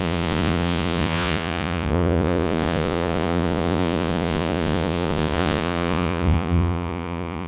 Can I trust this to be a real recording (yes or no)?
no